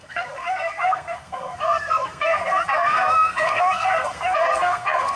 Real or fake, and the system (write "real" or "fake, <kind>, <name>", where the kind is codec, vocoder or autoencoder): fake, codec, SNAC